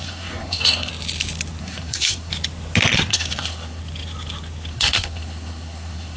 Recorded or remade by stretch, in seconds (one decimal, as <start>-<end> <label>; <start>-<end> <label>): 0.0-0.9 remade; 0.9-1.6 recorded; 1.6-2.3 remade; 2.3-2.9 recorded; 2.9-3.8 remade; 3.8-4.7 recorded; 4.7-6.2 remade